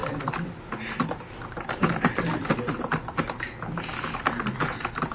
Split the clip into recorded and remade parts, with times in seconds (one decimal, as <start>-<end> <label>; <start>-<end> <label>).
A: 0.0-1.5 remade; 1.5-5.1 recorded